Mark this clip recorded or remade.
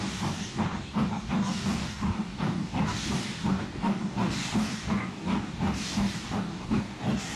remade